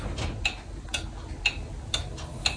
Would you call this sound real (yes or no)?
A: yes